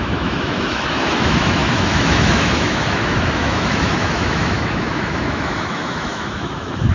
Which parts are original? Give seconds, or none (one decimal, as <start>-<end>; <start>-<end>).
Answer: none